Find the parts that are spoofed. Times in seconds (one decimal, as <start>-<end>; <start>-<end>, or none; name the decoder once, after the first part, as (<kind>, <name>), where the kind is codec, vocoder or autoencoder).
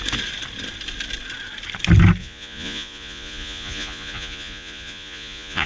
2.2-5.7 (vocoder, Vocos)